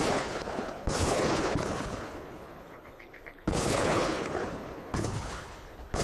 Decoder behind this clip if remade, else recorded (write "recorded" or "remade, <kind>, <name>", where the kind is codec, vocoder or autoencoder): remade, codec, HILCodec